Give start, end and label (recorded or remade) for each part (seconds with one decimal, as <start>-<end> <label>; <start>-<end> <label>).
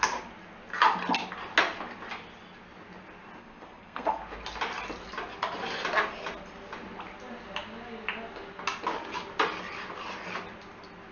0.0-3.4 recorded; 3.4-4.2 remade; 4.2-11.1 recorded